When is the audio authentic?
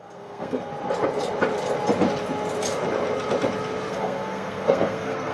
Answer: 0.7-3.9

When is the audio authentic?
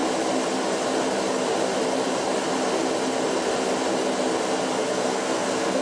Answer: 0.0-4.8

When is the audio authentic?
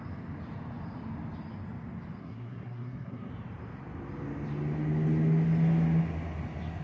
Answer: 0.0-2.2; 3.3-6.8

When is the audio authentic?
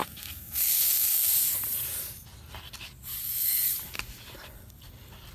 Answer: 1.3-3.2; 3.7-5.3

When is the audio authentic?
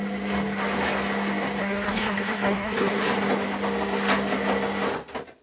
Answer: 0.0-1.6; 3.0-5.4